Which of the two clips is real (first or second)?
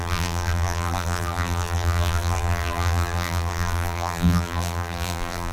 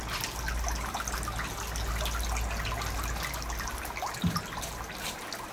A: second